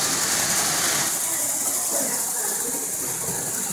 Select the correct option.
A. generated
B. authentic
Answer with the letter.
B